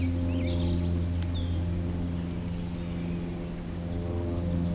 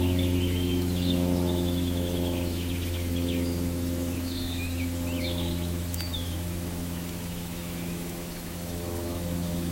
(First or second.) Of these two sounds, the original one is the first